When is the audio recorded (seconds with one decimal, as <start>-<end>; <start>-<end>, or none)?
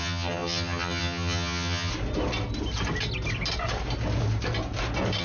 1.9-5.2